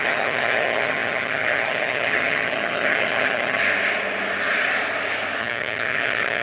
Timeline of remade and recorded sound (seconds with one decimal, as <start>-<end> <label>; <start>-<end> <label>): 0.0-3.6 remade; 3.6-5.4 recorded; 5.4-6.4 remade